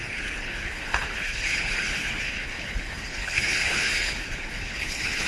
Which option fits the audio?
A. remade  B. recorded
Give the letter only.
A